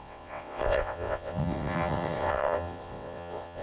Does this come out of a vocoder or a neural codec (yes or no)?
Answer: yes